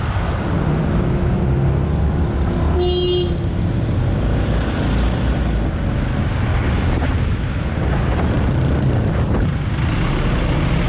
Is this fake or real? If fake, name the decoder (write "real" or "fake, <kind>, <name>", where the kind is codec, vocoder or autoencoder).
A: real